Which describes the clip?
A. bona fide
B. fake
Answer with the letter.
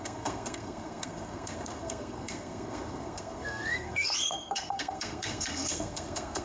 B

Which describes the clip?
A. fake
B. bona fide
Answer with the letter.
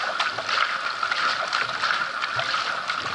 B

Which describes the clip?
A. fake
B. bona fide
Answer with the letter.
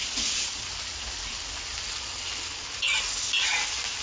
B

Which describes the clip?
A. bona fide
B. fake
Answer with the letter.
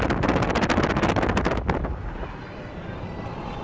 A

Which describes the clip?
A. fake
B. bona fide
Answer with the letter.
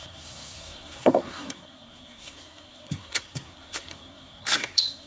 A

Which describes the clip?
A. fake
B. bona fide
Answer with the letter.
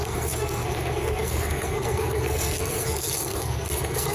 A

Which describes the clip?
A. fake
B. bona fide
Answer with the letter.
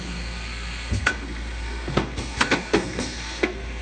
A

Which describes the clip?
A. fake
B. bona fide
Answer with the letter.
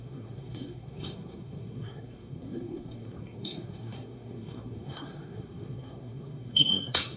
A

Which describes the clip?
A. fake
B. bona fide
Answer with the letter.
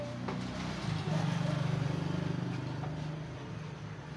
B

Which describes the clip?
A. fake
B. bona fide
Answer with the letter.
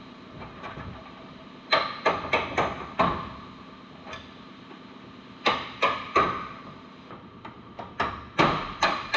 B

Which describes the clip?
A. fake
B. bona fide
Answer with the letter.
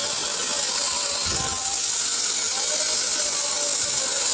B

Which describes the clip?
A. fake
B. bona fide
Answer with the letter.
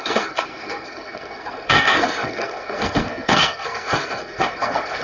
A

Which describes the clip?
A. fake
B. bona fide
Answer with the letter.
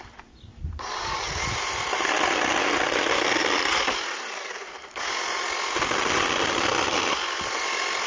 B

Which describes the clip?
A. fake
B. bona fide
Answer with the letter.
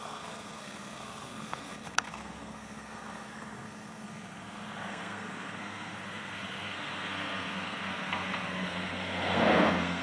A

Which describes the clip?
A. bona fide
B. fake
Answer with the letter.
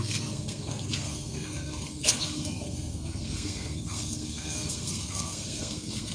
B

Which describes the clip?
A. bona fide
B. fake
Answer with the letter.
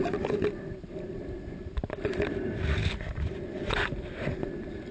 A